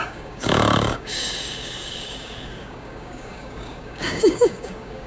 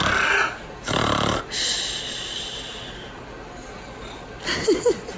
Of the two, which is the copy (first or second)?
first